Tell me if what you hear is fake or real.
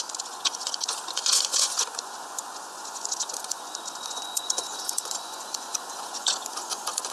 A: fake